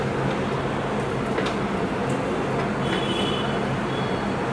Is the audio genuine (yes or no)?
yes